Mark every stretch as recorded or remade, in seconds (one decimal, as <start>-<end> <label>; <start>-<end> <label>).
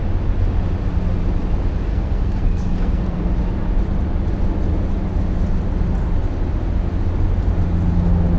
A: 0.0-1.9 recorded; 1.9-3.3 remade; 3.3-8.4 recorded